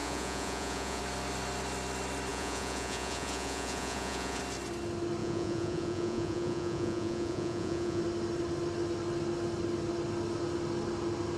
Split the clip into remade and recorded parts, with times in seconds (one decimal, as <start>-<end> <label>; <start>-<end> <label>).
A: 0.0-1.0 remade; 1.0-2.3 recorded; 2.3-4.4 remade; 4.4-5.2 recorded; 5.2-8.0 remade; 8.0-11.4 recorded